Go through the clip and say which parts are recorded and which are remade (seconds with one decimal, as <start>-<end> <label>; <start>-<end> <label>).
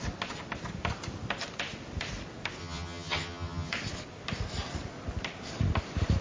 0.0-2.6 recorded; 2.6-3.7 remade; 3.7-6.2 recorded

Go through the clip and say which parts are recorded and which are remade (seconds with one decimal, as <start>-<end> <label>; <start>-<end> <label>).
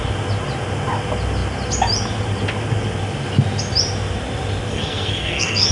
0.0-4.7 recorded; 4.7-5.7 remade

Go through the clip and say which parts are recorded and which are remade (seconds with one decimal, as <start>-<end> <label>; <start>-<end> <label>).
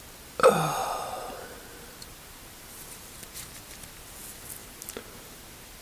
0.0-0.8 recorded; 0.8-3.5 remade; 3.5-4.6 recorded; 4.6-5.2 remade; 5.2-5.8 recorded